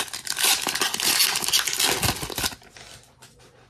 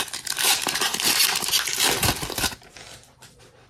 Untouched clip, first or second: first